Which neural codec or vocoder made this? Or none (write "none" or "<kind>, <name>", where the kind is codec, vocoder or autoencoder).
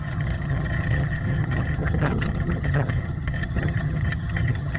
vocoder, HiFi-GAN